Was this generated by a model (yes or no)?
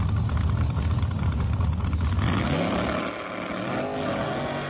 no